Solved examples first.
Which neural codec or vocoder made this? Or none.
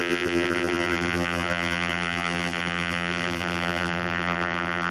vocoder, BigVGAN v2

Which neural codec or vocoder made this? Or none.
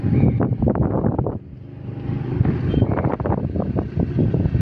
none